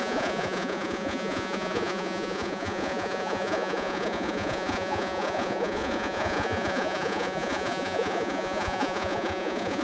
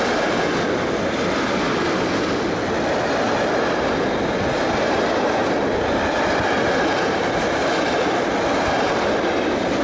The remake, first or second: first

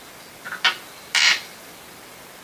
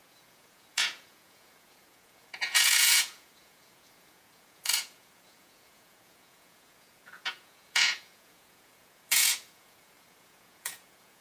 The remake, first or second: second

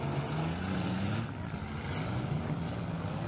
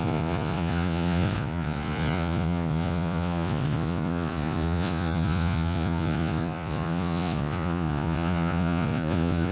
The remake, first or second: second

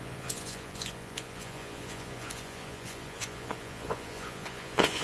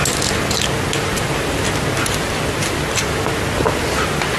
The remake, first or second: first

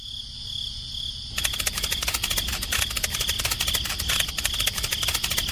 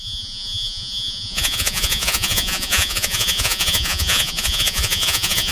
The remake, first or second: second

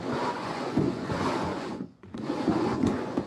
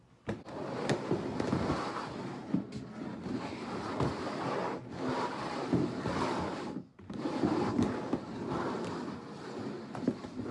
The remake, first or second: first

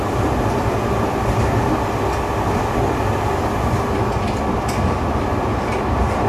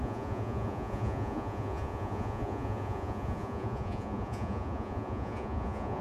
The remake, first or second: second